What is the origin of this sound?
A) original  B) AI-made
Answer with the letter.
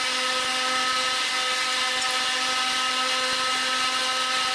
A